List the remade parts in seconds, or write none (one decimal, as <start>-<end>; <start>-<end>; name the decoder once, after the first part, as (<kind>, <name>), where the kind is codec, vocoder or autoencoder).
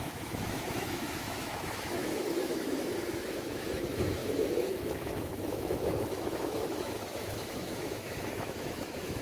0.0-9.2 (autoencoder, DAC-VAE)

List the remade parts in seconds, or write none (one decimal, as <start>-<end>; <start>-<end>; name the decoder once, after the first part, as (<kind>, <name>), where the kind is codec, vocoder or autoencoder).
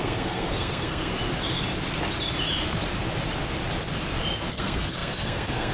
0.0-1.1 (codec, SNAC); 4.5-5.7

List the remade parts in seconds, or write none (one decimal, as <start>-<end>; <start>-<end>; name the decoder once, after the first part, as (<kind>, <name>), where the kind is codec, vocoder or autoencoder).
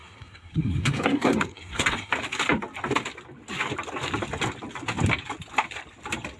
0.0-2.1 (codec, SNAC)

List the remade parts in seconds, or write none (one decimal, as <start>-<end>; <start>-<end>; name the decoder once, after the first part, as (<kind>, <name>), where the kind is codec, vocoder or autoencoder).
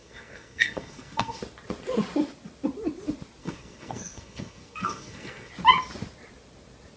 0.0-1.4 (codec, SNAC); 3.4-5.5